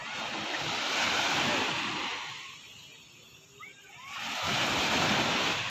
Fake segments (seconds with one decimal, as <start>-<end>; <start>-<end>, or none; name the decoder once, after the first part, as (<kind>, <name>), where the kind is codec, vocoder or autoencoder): none